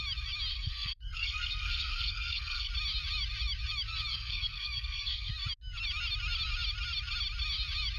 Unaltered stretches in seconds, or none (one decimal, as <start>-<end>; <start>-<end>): 0.0-0.5; 2.7-4.1; 5.3-8.0